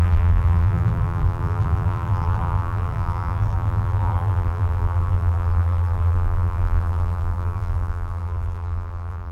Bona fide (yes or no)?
no